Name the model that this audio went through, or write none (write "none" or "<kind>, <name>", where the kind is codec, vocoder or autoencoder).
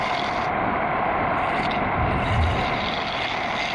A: none